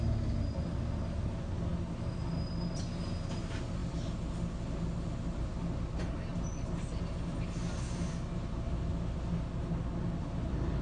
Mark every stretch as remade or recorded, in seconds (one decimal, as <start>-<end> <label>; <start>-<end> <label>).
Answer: 0.0-10.8 recorded